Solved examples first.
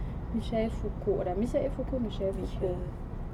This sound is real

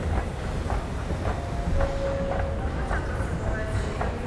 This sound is real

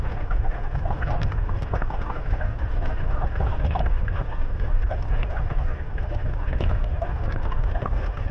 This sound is fake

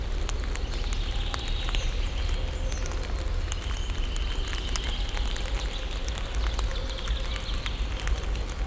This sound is real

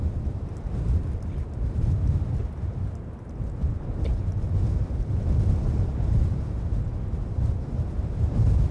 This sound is real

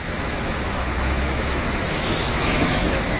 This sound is fake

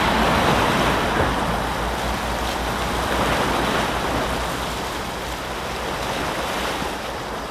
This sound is real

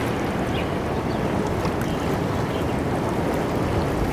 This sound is real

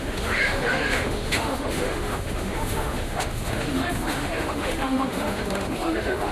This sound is fake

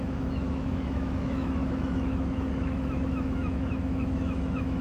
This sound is fake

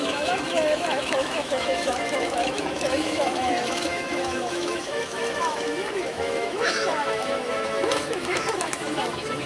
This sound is fake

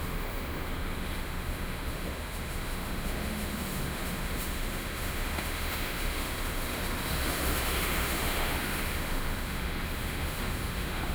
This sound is fake